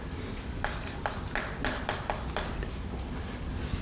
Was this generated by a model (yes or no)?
no